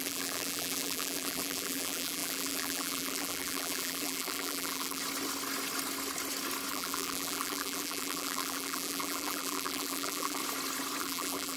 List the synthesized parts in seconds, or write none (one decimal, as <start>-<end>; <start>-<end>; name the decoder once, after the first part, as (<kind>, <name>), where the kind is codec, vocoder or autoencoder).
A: 0.0-5.0 (vocoder, BigVGAN v2); 6.7-10.4; 11.0-11.6